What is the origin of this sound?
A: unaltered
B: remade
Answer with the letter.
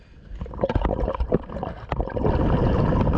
A